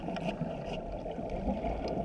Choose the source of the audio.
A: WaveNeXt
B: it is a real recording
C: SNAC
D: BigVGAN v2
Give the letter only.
B